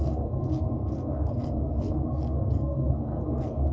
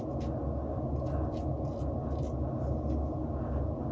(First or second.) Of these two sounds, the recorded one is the second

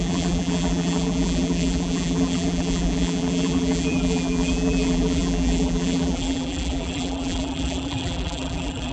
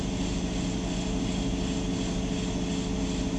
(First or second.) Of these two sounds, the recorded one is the second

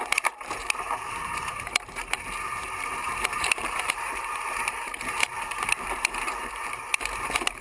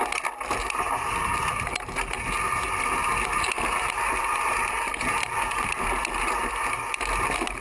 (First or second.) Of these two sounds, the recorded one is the second